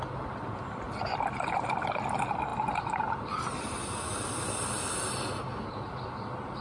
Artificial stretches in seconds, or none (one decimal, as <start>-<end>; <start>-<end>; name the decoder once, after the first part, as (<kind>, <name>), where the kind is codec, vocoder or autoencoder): none

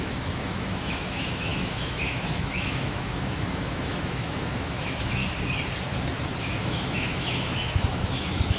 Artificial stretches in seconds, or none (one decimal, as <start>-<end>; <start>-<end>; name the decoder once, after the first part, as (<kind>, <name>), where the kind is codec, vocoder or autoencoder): 0.0-5.2 (autoencoder, DAC-VAE); 6.4-8.6